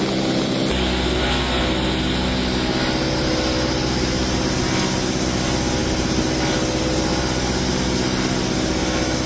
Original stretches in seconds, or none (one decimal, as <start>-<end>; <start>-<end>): 0.0-9.3